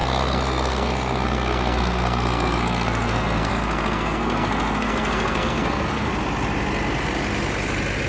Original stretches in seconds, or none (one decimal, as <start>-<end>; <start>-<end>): 6.1-8.1